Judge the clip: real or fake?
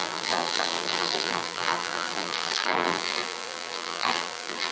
fake